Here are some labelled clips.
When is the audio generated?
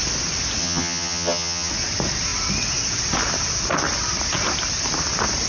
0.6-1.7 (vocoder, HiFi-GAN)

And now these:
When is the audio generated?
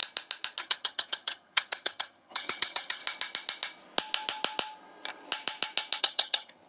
0.6-3.0 (vocoder, HiFi-GAN); 6.0-6.7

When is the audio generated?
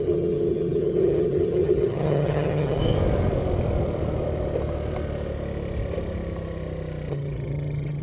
0.0-2.8 (vocoder, HiFi-GAN); 7.1-8.0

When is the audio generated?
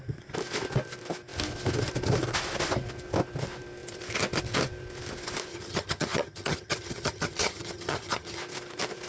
5.5-8.4 (vocoder, HiFi-GAN)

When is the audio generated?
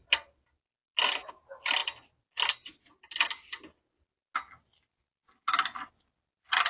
none